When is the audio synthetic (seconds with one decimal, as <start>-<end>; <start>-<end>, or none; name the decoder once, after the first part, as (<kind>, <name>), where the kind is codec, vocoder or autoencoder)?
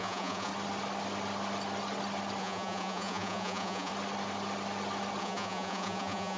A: 0.0-0.5 (vocoder, Vocos); 2.4-3.9; 5.2-6.4